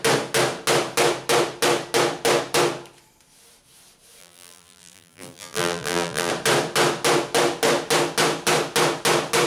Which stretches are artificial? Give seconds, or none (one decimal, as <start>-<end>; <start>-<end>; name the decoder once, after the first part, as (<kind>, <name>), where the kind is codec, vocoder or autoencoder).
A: 4.2-6.3 (vocoder, BigVGAN v2)